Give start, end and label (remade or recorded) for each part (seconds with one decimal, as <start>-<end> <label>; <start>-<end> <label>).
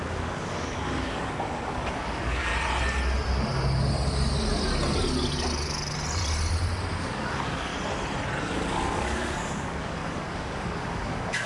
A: 0.0-2.5 remade; 2.5-7.0 recorded; 7.0-7.7 remade; 7.7-8.4 recorded; 8.4-11.5 remade